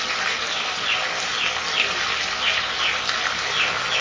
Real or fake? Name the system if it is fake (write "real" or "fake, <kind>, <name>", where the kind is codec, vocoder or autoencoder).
real